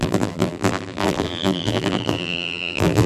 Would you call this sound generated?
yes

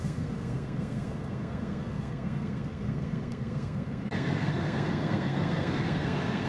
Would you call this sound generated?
yes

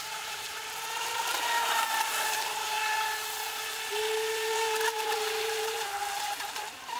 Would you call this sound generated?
yes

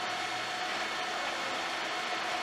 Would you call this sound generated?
no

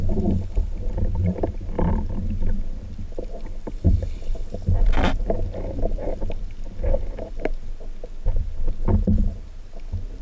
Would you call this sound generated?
no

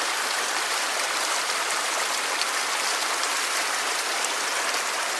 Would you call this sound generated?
yes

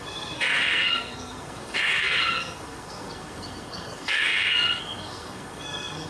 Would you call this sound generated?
yes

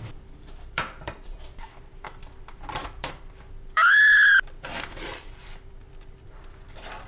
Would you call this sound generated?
yes